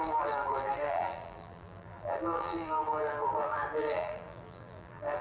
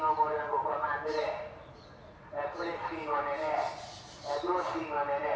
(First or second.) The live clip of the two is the second